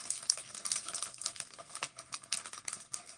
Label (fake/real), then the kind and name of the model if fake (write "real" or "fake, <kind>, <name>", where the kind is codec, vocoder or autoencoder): fake, codec, SNAC